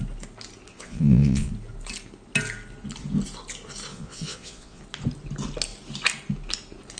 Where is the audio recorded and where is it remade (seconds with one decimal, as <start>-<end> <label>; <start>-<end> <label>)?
0.0-0.7 recorded; 0.7-1.5 remade; 1.5-3.9 recorded; 3.9-4.8 remade; 4.8-7.0 recorded